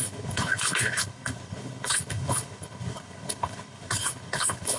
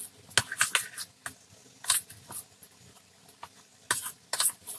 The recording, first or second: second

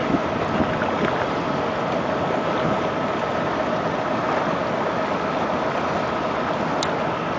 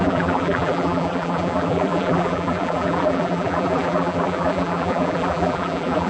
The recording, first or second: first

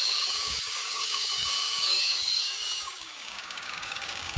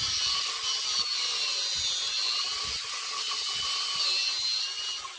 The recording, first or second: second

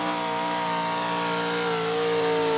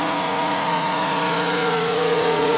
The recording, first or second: first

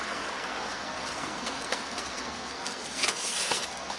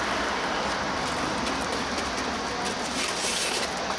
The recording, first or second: second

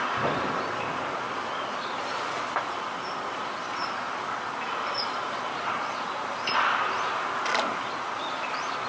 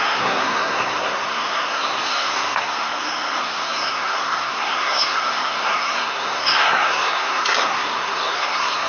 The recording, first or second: first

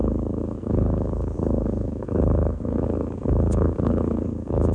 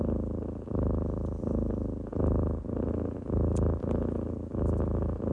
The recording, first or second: second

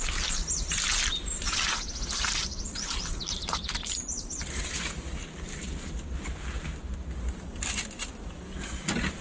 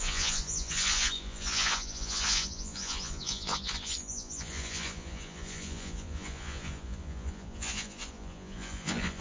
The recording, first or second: first